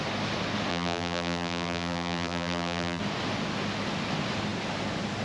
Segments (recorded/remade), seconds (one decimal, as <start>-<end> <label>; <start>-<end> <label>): 0.0-0.7 recorded; 0.7-3.0 remade; 3.0-5.2 recorded